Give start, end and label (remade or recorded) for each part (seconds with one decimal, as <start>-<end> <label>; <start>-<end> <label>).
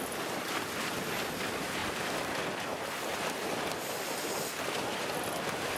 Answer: 0.0-5.8 recorded